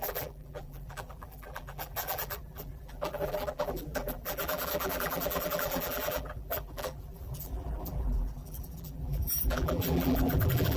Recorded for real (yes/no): no